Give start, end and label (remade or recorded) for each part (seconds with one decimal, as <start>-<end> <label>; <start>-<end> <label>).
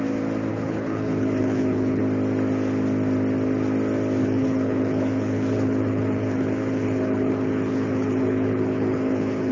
0.0-0.5 recorded; 0.5-2.0 remade; 2.0-4.2 recorded; 4.2-9.5 remade